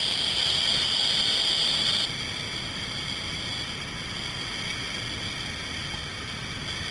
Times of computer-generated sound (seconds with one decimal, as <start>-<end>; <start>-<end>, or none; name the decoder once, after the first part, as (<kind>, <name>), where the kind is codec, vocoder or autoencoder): none